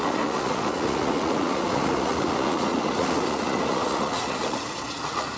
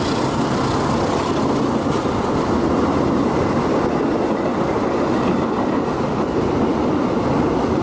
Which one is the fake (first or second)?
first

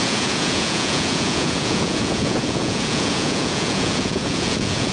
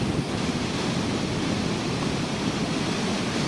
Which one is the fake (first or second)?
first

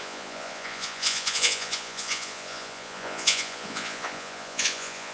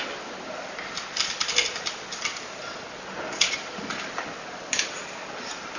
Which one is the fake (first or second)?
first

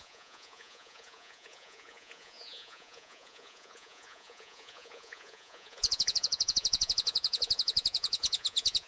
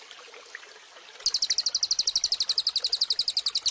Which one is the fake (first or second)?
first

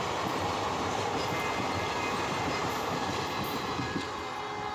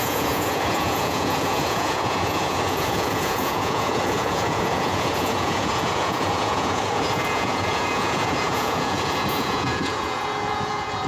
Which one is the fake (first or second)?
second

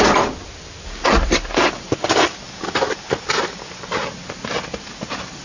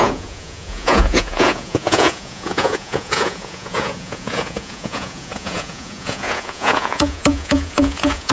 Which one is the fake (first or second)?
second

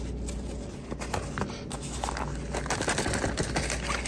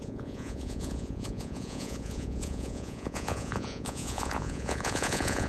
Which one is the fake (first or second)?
second